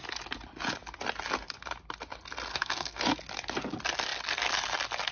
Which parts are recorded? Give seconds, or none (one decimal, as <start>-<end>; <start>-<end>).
0.0-2.5; 3.0-5.1